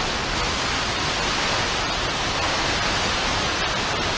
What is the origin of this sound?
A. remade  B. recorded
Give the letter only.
B